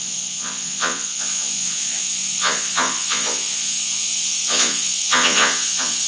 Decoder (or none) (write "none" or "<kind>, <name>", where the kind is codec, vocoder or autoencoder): vocoder, Vocos